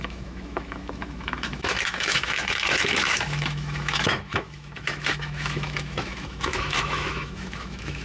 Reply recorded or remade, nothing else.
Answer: remade